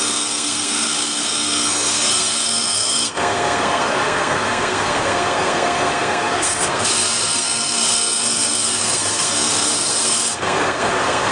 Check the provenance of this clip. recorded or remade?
remade